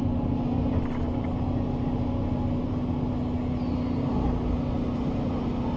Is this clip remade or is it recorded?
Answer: recorded